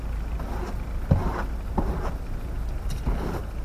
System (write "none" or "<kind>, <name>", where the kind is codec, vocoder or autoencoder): none